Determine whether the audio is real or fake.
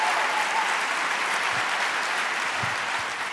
real